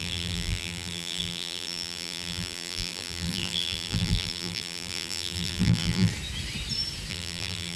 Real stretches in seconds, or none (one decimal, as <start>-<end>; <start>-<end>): 6.1-7.1